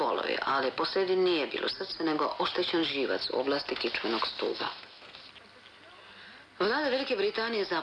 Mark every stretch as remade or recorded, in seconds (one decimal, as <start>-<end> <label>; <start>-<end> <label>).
0.0-4.5 recorded; 4.5-5.2 remade; 5.2-7.8 recorded

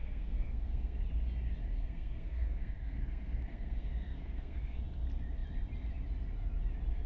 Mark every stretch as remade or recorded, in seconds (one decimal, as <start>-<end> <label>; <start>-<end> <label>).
0.0-1.0 remade; 1.0-1.6 recorded; 1.6-4.8 remade; 4.8-7.1 recorded

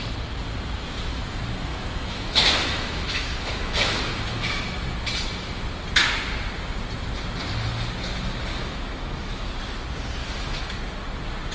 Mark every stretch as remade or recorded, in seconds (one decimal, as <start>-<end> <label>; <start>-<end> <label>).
0.0-1.7 recorded; 1.7-4.6 remade; 4.6-8.5 recorded; 8.5-9.5 remade; 9.5-10.2 recorded; 10.2-10.8 remade; 10.8-11.5 recorded

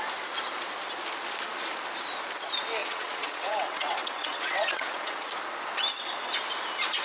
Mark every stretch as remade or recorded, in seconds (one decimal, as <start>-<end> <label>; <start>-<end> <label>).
0.0-2.8 recorded; 2.8-5.3 remade; 5.3-7.0 recorded

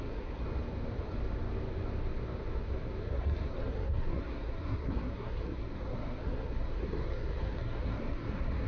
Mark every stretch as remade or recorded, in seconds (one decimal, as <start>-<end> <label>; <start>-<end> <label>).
0.0-0.4 remade; 0.4-3.0 recorded; 3.0-8.7 remade

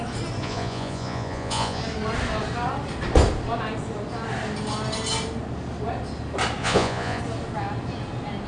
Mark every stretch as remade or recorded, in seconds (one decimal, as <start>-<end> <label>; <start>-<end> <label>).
0.0-0.4 recorded; 0.4-1.8 remade; 1.8-6.6 recorded; 6.6-7.2 remade; 7.2-8.5 recorded

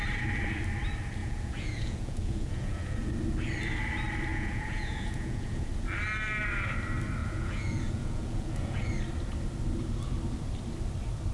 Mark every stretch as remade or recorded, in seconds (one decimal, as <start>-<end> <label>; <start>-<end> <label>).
0.0-1.2 recorded; 1.2-3.1 remade; 3.1-4.3 recorded; 4.3-5.7 remade; 5.7-7.2 recorded; 7.2-8.9 remade; 8.9-11.3 recorded